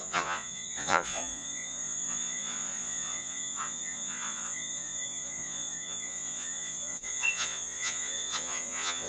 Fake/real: fake